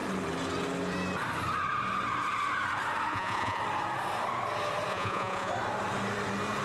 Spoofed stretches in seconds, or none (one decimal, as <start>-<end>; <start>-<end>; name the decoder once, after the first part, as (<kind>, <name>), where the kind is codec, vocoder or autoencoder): 3.1-3.6 (vocoder, Vocos); 4.9-5.5